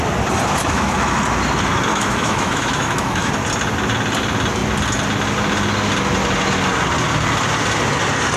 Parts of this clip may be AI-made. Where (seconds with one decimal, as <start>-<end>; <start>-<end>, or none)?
0.6-1.2; 1.9-3.3